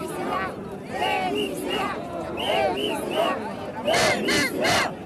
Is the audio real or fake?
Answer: real